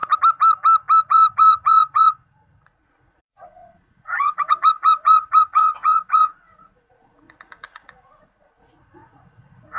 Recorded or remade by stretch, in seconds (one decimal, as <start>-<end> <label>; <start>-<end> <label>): 0.0-1.0 recorded; 1.0-9.8 remade